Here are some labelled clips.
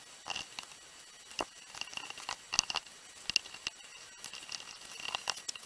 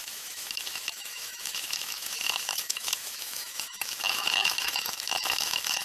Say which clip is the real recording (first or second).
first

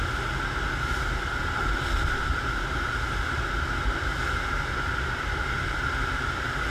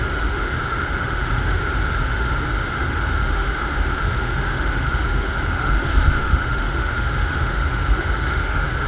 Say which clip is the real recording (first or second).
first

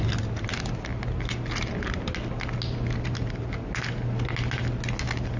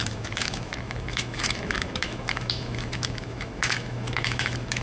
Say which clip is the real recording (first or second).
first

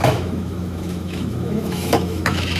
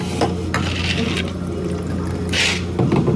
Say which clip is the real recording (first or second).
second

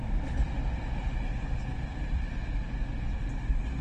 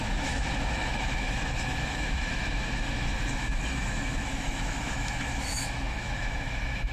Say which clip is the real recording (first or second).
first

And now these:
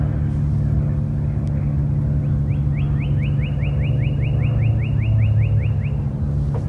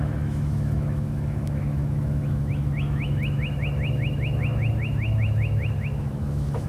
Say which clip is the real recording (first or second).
first